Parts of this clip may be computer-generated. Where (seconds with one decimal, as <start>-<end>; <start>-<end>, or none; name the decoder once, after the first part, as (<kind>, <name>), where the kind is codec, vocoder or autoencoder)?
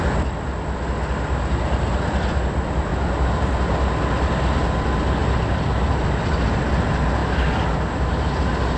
none